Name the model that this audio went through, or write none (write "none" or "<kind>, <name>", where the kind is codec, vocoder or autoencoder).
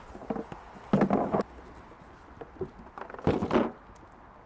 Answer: none